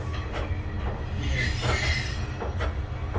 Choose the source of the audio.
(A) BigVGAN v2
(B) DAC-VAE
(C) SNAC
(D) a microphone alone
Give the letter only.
D